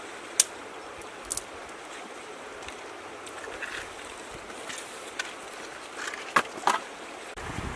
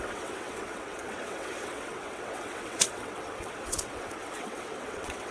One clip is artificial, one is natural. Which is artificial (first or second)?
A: second